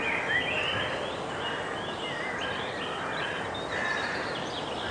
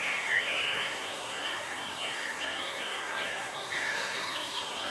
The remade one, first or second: second